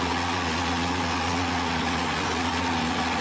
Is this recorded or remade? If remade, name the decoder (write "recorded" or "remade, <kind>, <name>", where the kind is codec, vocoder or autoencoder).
remade, vocoder, Vocos